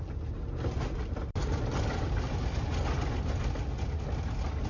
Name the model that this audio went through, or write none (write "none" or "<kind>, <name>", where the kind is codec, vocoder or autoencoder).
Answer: none